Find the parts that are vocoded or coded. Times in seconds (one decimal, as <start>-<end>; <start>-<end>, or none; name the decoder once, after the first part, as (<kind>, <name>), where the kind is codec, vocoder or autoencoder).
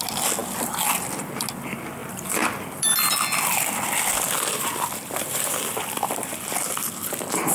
0.4-1.3 (vocoder, BigVGAN v2); 2.0-6.5